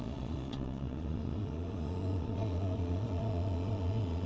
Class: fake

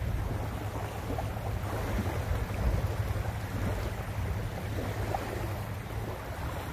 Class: real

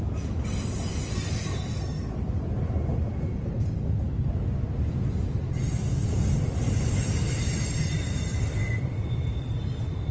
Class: real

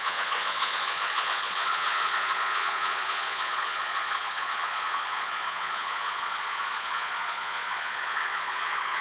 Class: fake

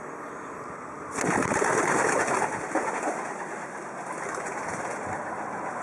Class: real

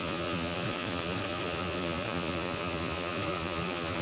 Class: fake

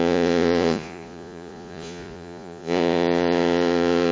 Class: fake